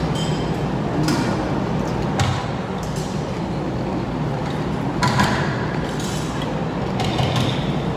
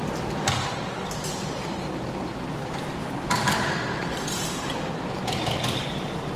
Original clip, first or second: first